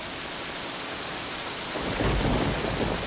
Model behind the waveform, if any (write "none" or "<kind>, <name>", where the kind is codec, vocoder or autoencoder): none